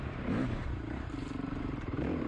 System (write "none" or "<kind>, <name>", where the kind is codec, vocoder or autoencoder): vocoder, BigVGAN v2